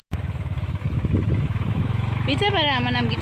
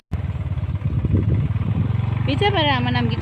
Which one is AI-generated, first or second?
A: first